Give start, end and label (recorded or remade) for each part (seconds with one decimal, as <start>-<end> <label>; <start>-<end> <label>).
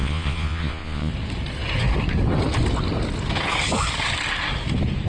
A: 0.0-1.1 remade; 1.1-5.1 recorded